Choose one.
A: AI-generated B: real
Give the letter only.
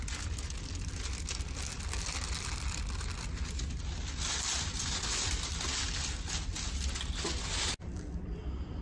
B